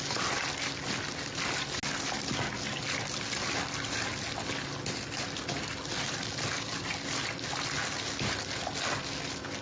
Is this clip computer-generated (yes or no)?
no